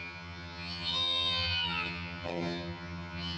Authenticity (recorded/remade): remade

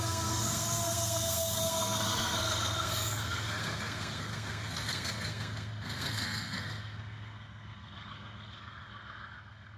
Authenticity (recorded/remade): remade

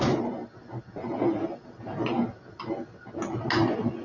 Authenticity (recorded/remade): recorded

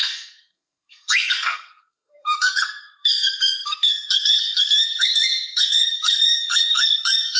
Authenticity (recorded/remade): remade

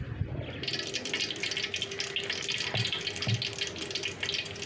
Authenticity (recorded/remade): recorded